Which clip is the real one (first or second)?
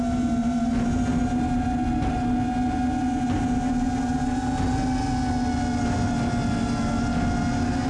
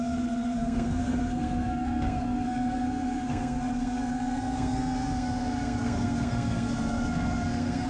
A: first